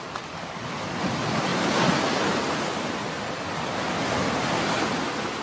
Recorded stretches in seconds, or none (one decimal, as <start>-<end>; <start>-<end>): 0.0-5.4